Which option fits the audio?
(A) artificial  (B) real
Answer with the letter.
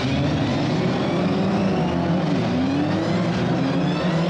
B